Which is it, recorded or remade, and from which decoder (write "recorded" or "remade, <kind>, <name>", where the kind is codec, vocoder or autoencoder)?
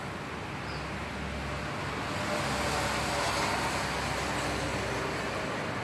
recorded